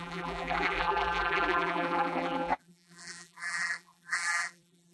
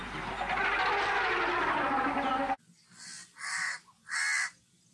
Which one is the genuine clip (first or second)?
second